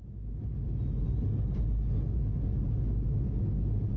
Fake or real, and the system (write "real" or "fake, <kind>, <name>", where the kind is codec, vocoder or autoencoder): real